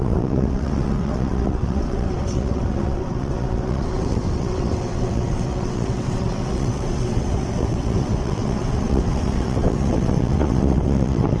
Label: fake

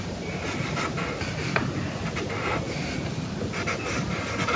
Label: real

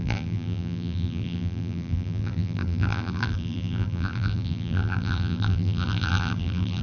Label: fake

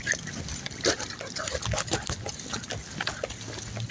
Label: real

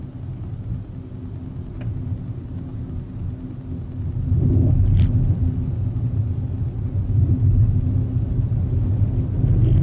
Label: real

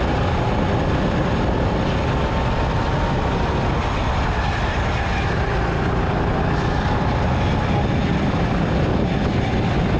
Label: real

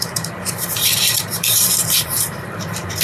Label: fake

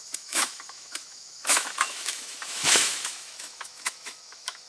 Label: fake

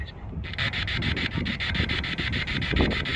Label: real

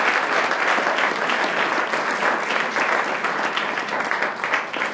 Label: real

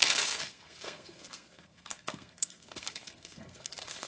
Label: fake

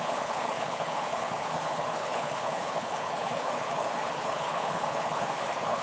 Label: fake